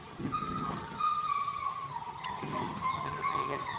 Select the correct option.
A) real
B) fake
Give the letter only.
B